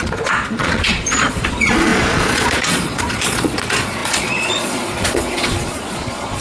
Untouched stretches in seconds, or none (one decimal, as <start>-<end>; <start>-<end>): none